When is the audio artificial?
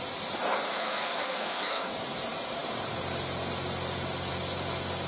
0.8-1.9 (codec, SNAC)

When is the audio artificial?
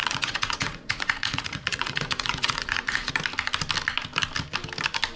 0.0-3.1 (vocoder, Vocos)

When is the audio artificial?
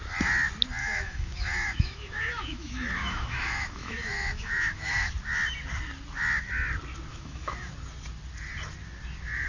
0.8-5.1 (autoencoder, DAC-VAE); 7.1-7.7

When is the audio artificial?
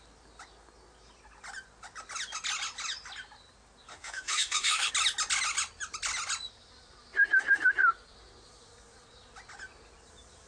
3.9-4.9 (autoencoder, DAC-VAE)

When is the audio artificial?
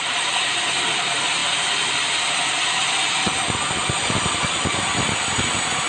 none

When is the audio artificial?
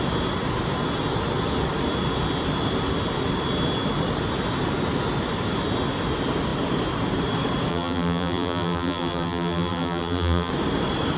7.7-10.5 (vocoder, BigVGAN v2)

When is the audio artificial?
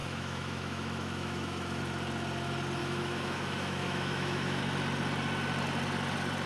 0.0-1.8 (autoencoder, DAC-VAE); 2.8-4.6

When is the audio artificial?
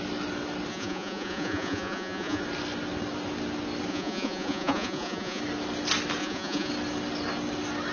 0.7-2.4 (vocoder, Vocos); 3.9-5.4; 6.2-6.7